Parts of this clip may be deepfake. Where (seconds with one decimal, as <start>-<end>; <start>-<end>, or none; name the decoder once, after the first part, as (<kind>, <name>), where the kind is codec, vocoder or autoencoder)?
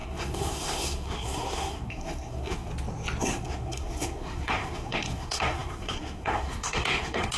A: 0.0-2.7 (codec, SNAC); 3.2-7.4